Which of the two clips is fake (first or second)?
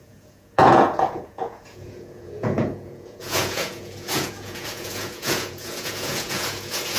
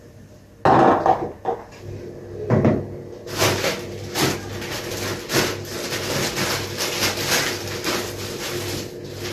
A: first